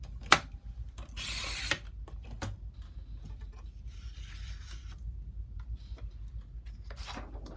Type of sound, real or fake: real